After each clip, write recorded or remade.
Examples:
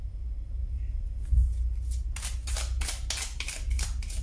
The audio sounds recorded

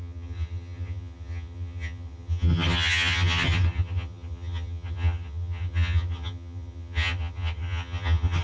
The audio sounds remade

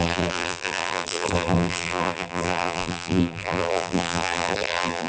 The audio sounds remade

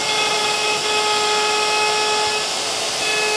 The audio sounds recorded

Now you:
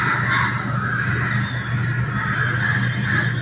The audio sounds recorded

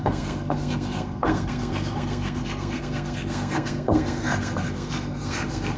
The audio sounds remade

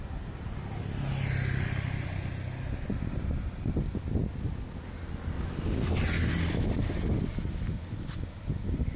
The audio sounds recorded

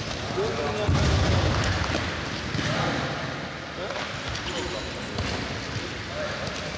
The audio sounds recorded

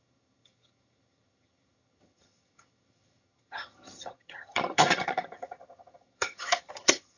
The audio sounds remade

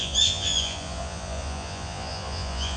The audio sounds remade